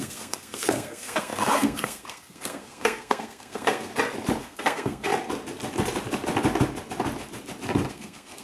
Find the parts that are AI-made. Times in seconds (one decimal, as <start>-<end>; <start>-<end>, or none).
0.0-3.9; 4.4-5.1; 7.9-8.4